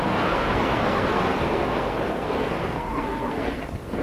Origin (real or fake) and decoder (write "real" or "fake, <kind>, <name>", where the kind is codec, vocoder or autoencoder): fake, codec, SNAC